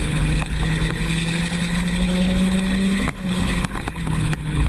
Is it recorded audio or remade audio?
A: remade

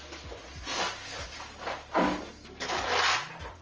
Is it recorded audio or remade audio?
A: recorded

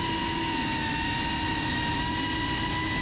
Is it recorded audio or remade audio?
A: recorded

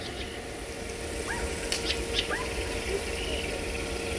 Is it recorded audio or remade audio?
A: recorded